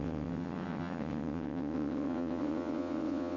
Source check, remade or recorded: remade